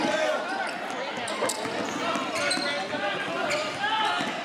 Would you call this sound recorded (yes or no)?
yes